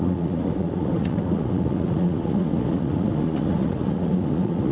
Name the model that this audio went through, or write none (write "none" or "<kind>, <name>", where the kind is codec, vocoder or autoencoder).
vocoder, Vocos